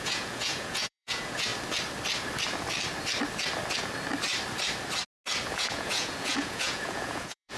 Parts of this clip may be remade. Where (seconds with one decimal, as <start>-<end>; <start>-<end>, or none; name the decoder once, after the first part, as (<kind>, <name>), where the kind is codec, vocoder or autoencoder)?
0.0-1.5 (vocoder, Vocos); 5.5-7.6